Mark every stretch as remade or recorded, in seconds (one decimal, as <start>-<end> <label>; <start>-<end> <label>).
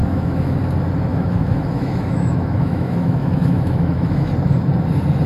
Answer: 0.0-0.6 remade; 0.6-1.1 recorded; 1.1-4.3 remade; 4.3-5.3 recorded